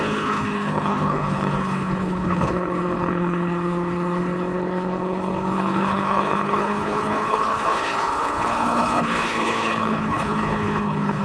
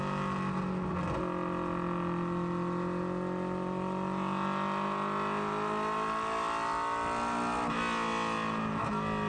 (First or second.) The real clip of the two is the second